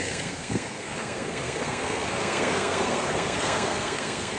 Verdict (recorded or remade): remade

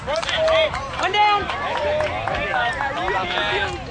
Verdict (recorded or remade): recorded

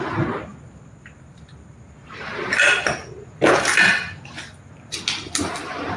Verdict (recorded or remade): recorded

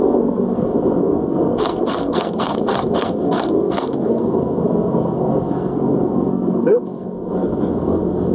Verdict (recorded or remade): remade